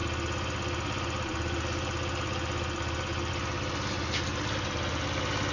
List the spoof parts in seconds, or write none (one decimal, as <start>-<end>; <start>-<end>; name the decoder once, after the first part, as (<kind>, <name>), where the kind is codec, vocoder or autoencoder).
none